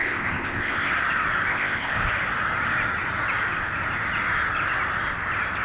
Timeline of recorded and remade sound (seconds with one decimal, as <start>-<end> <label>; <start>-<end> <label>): 0.0-0.9 remade; 0.9-1.5 recorded; 1.5-2.1 remade; 2.1-5.6 recorded